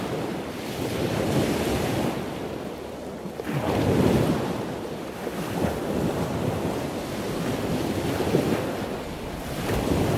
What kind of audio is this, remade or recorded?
recorded